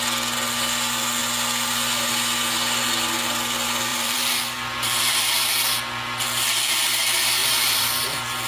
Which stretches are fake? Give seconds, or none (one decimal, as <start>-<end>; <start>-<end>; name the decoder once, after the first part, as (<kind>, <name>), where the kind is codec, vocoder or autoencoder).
3.9-5.1 (vocoder, BigVGAN v2); 7.4-8.5